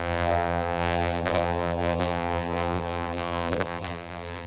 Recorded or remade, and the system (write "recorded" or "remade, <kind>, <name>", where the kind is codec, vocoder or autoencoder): remade, vocoder, BigVGAN v2